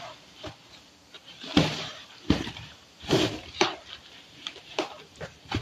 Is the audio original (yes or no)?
no